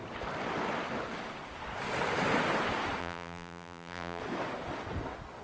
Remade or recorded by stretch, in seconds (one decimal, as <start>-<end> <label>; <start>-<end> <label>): 0.0-3.0 recorded; 3.0-4.2 remade; 4.2-5.4 recorded